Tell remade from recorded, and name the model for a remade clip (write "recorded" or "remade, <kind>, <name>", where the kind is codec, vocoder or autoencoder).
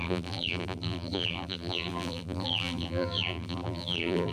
remade, vocoder, BigVGAN v2